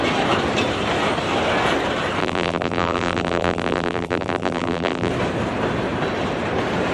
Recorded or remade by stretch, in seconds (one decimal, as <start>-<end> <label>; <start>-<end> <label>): 0.0-2.2 recorded; 2.2-5.1 remade; 5.1-6.9 recorded